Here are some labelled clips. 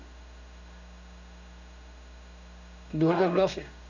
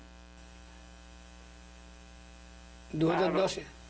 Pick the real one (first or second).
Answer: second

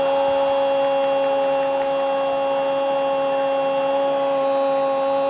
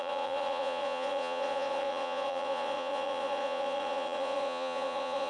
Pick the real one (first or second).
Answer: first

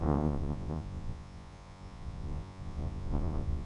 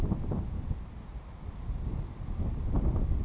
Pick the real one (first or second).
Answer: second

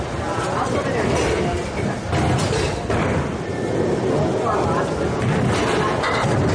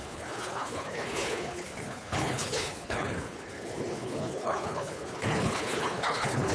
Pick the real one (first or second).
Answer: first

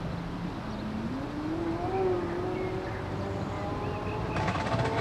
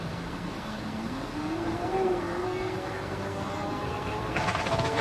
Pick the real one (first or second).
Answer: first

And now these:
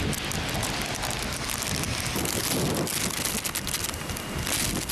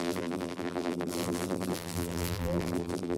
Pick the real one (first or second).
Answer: first